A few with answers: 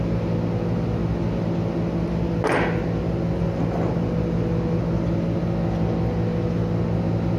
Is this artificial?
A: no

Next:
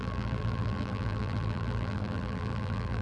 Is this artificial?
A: yes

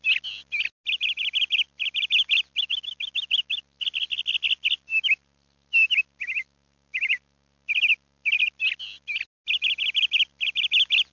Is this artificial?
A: no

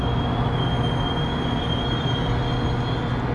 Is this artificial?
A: no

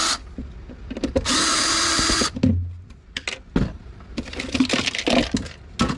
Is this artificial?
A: no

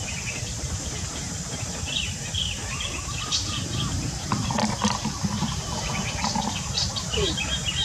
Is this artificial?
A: yes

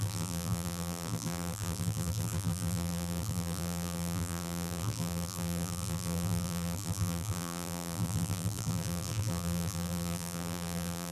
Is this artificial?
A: yes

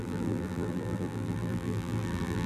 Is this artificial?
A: yes